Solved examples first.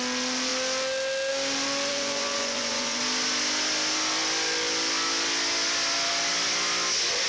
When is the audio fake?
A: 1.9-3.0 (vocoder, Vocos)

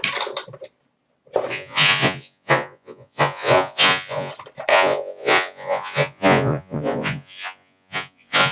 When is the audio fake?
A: 1.5-4.3 (vocoder, Vocos); 4.7-8.5

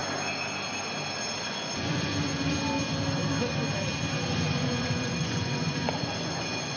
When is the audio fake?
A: 1.4-2.1 (vocoder, Vocos); 4.3-6.8